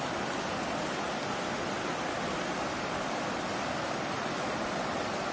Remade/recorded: recorded